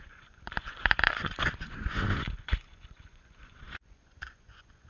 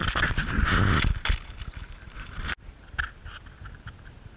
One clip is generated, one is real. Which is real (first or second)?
second